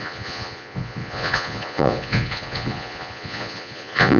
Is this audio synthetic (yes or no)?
yes